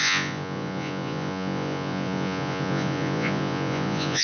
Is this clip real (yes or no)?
no